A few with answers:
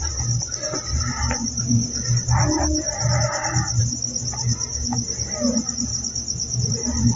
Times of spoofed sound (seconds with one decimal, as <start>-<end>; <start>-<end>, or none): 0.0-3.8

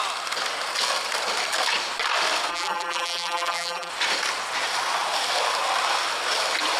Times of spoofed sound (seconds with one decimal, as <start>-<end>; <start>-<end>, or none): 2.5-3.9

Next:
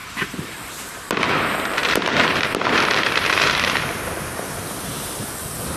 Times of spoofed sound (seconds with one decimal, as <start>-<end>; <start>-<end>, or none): 1.8-5.3

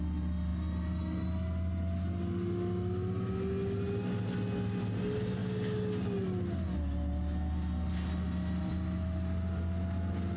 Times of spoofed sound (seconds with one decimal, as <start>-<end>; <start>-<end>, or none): none